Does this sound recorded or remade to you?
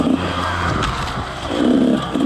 remade